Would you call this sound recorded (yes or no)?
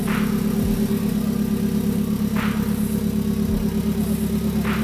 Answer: yes